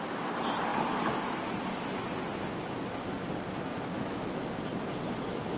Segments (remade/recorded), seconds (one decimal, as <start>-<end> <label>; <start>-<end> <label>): 0.0-3.9 recorded; 3.9-4.5 remade; 4.5-5.6 recorded